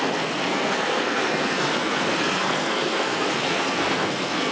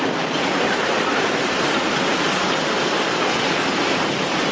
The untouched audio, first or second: second